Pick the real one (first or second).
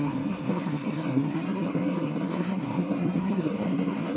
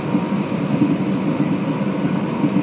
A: second